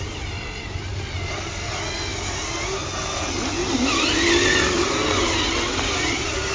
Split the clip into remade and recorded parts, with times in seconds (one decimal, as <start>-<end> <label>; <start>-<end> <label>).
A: 0.0-6.5 recorded